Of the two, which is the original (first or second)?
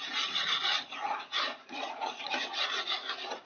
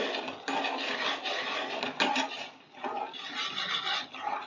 second